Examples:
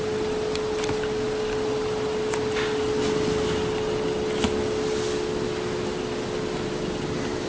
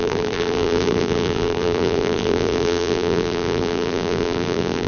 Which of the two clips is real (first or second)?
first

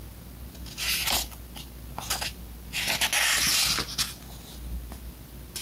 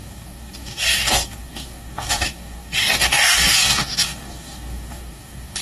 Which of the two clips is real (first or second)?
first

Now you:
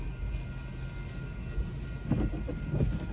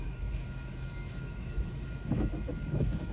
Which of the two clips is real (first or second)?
first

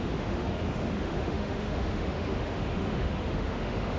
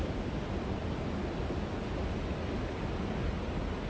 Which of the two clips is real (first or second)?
second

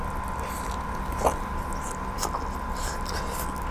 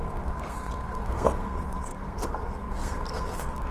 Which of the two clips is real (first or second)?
first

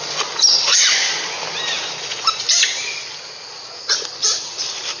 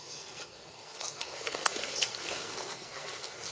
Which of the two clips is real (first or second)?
first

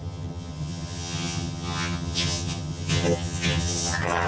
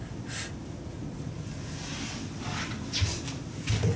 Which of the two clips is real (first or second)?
second